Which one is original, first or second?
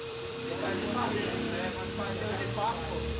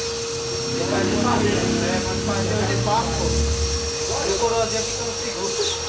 second